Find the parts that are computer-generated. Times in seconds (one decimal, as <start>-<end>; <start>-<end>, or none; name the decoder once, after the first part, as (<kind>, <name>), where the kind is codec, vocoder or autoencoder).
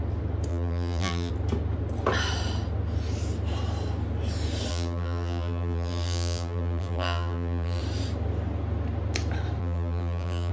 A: 0.5-1.3 (vocoder, BigVGAN v2); 4.7-7.8; 9.6-10.5